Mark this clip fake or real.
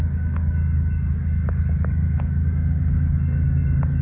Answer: fake